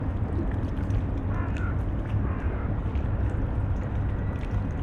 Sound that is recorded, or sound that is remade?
recorded